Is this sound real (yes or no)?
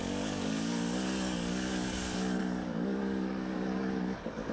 no